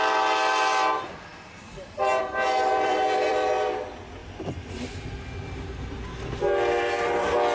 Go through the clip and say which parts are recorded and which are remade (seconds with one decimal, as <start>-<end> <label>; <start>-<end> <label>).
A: 0.0-2.7 recorded; 2.7-3.5 remade; 3.5-4.2 recorded; 4.2-4.9 remade; 4.9-7.5 recorded